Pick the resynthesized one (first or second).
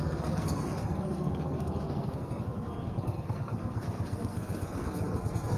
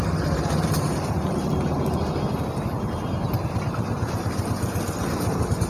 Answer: first